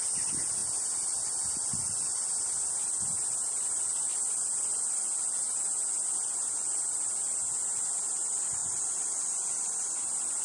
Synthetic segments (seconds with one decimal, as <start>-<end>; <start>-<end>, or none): 0.6-2.7; 4.1-5.0